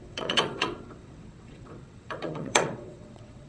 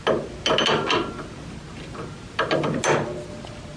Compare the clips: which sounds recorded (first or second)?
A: second